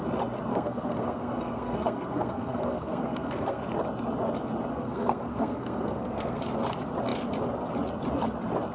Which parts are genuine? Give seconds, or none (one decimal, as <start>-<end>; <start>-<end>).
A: 0.0-0.5; 3.6-4.7; 6.4-8.7